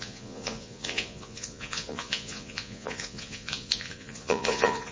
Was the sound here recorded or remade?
remade